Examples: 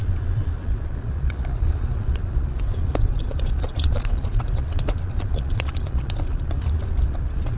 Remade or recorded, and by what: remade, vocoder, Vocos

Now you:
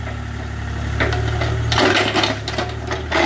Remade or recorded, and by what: recorded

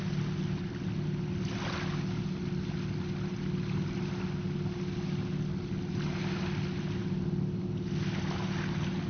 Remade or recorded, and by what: recorded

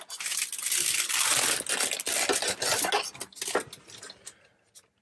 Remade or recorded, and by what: recorded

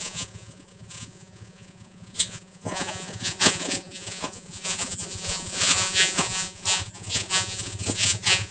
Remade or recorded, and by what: remade, vocoder, Vocos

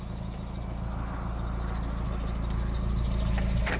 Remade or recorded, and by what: recorded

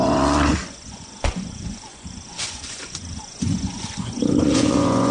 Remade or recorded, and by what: remade, vocoder, Vocos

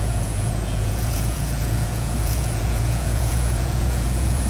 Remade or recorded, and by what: remade, vocoder, Vocos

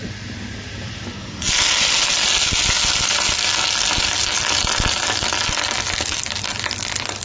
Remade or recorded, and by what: recorded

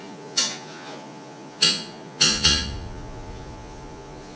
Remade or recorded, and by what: remade, vocoder, Vocos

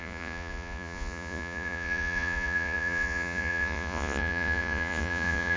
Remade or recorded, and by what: remade, vocoder, Vocos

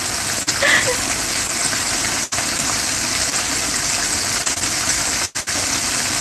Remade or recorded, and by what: recorded